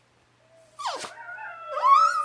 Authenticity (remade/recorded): recorded